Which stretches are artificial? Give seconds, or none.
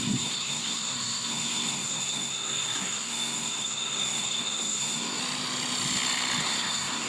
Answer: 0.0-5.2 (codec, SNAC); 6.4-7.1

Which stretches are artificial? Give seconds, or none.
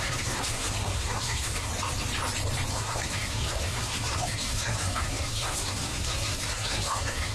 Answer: 0.0-1.7 (codec, SNAC); 2.7-7.3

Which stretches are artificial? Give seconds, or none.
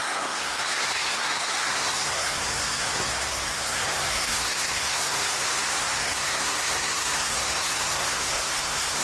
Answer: 0.0-9.0 (codec, SNAC)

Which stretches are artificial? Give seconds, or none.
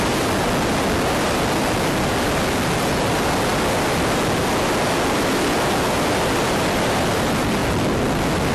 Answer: none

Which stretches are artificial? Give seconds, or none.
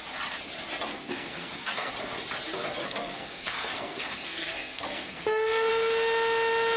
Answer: 0.9-1.9 (codec, SNAC); 2.8-5.7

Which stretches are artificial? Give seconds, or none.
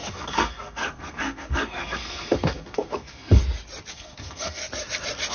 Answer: 0.0-3.4 (codec, SNAC); 3.9-4.6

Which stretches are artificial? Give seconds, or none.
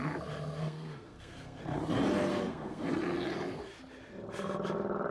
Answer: 0.6-1.6 (codec, SNAC); 2.3-2.9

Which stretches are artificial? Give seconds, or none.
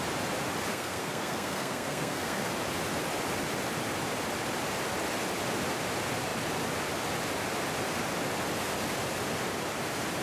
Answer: 0.7-2.5 (codec, SNAC)